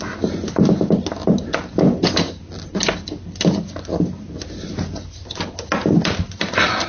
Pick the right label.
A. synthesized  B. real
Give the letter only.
B